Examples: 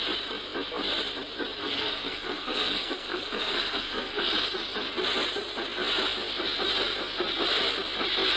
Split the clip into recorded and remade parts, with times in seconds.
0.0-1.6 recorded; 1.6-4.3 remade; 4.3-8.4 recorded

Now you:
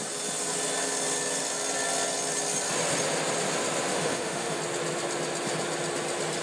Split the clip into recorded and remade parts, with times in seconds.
0.0-3.9 recorded; 3.9-4.6 remade; 4.6-6.4 recorded

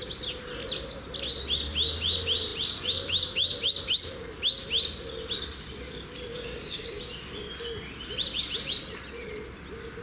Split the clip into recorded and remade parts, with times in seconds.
0.0-6.3 recorded; 6.3-7.0 remade; 7.0-10.0 recorded

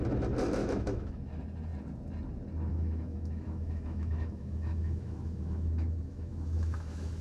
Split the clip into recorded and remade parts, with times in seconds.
0.0-0.6 recorded; 0.6-1.2 remade; 1.2-2.7 recorded; 2.7-7.2 remade

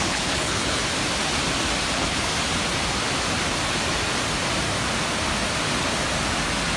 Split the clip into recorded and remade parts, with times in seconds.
0.0-0.8 remade; 0.8-1.9 recorded; 1.9-2.3 remade; 2.3-6.8 recorded